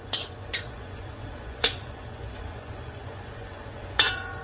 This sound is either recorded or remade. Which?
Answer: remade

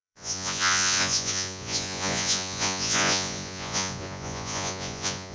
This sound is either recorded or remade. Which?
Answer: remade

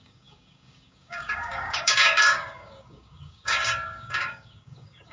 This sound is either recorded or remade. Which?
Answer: remade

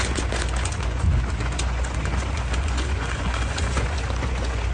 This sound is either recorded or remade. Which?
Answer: remade